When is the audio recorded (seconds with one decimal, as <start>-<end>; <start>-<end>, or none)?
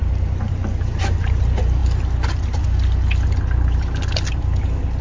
0.5-5.0